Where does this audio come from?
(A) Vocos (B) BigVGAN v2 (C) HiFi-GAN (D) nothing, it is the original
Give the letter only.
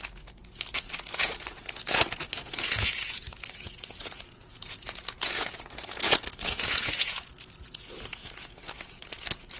A